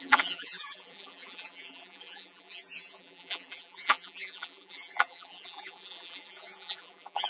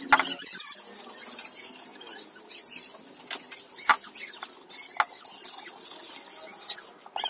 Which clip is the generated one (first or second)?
first